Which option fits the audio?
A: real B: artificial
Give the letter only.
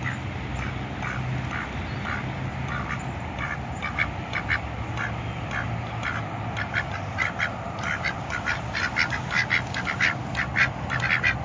A